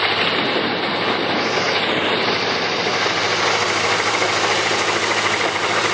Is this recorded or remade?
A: recorded